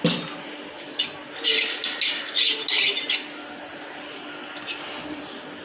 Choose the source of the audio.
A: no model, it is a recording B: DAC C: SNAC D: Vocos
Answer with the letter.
A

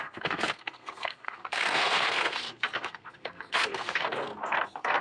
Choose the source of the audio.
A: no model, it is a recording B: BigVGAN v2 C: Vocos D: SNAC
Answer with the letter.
D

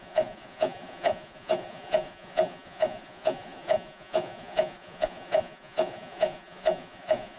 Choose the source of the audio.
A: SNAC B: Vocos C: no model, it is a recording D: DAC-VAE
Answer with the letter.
B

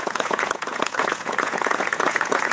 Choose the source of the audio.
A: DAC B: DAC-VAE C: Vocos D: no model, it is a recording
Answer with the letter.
C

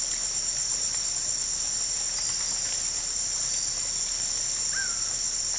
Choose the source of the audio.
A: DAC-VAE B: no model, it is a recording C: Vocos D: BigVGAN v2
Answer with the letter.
B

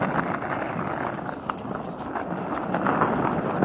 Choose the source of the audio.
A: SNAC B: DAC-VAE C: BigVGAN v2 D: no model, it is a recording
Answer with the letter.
D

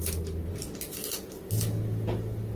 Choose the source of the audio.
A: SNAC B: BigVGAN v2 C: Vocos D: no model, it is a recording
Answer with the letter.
D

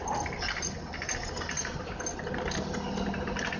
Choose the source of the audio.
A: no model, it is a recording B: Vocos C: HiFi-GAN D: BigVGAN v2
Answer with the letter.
A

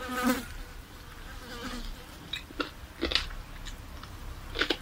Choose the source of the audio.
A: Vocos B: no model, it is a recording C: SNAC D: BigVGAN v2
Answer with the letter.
B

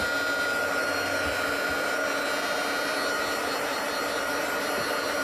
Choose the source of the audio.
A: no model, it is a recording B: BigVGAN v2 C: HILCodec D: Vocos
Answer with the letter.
A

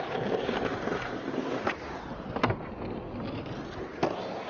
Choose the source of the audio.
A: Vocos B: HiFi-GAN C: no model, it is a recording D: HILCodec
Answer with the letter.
C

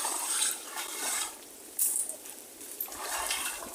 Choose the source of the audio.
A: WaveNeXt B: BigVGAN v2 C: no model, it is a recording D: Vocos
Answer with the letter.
B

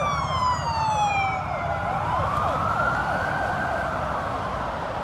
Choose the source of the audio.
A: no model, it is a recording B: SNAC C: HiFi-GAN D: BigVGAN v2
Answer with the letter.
D